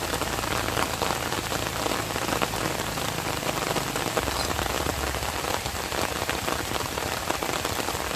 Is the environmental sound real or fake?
fake